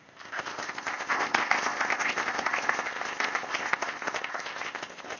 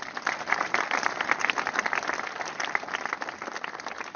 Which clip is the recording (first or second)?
second